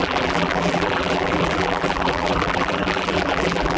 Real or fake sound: fake